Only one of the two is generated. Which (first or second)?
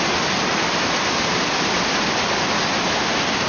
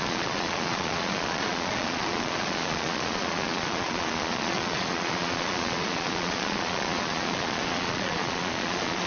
second